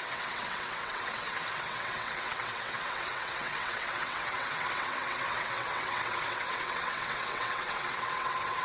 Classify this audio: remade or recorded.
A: remade